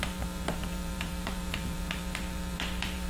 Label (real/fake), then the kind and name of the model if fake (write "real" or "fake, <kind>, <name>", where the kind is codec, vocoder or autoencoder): fake, vocoder, BigVGAN v2